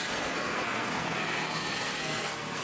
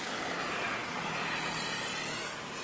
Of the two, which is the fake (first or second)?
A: first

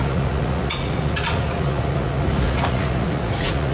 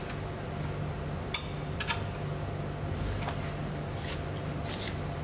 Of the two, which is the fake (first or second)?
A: first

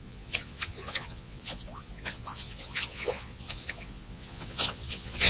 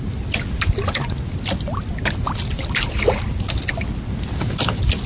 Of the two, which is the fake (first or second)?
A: first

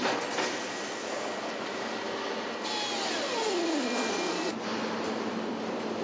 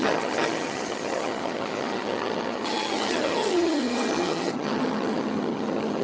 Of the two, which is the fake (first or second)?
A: second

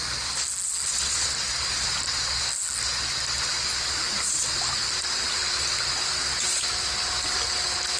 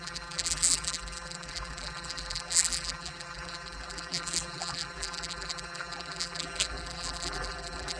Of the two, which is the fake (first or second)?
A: second